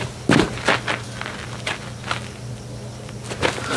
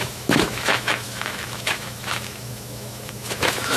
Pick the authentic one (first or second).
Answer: first